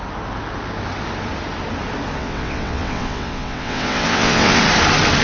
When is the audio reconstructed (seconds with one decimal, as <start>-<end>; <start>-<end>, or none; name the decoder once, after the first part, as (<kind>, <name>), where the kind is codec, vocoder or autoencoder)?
2.2-4.6 (vocoder, WaveNeXt)